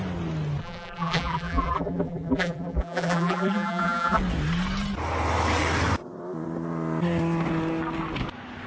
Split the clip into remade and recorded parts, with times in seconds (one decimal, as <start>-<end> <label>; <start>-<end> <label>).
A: 0.0-0.6 recorded; 0.6-4.2 remade; 4.2-8.7 recorded